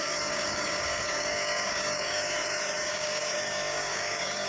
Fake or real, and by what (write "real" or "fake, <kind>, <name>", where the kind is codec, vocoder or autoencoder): fake, codec, DAC